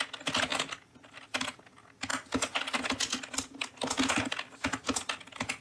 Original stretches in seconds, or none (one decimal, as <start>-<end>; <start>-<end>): 0.0-5.6